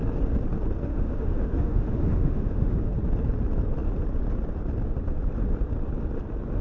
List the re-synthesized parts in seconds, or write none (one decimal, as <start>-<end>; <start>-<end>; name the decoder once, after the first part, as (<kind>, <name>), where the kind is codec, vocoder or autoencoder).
0.8-2.9 (autoencoder, DAC-VAE)